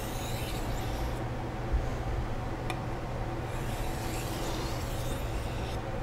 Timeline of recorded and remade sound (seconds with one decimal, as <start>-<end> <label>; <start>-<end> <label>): 0.0-0.8 remade; 0.8-1.9 recorded; 1.9-5.5 remade; 5.5-6.0 recorded